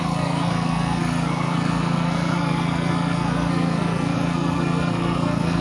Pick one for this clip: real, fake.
fake